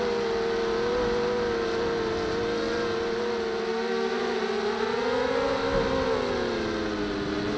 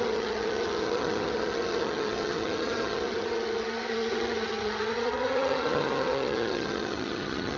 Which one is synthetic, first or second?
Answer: second